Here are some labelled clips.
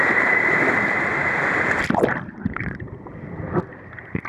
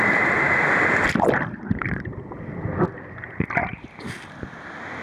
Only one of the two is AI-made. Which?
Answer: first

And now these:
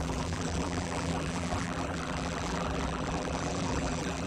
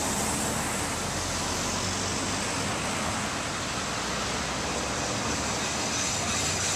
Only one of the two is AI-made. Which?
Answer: first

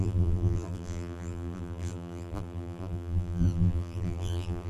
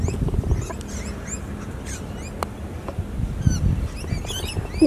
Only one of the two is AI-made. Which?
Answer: first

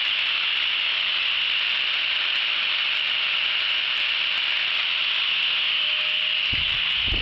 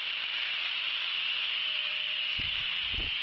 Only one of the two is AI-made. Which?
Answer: second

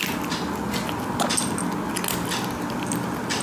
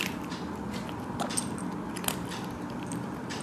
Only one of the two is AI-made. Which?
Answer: second